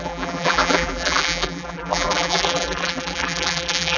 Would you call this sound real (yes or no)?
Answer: no